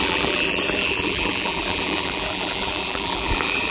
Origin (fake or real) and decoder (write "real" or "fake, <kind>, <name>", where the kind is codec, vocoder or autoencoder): fake, vocoder, BigVGAN v2